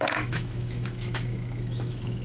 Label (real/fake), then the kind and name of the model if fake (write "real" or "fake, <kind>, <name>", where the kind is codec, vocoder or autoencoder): fake, autoencoder, DAC-VAE